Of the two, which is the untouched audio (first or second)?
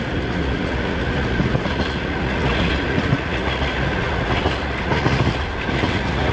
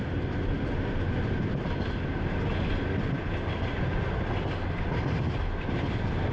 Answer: second